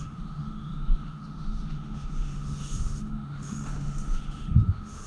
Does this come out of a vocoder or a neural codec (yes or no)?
yes